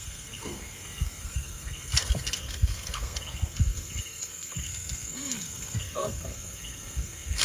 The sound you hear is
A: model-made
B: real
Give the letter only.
A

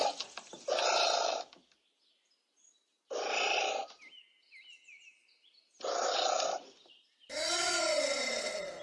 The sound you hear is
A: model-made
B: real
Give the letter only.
B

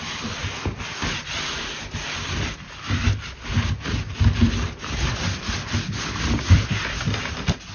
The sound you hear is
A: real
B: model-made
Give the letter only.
A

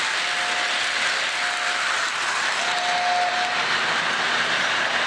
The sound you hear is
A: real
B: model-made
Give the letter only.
A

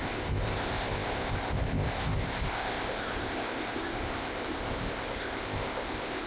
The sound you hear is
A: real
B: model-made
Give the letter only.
B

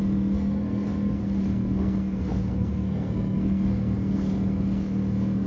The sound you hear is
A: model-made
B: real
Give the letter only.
A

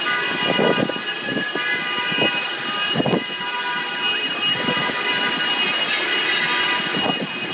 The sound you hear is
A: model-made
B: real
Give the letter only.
B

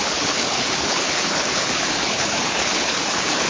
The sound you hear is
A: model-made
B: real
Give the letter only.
A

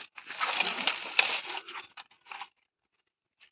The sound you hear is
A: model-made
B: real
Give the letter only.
B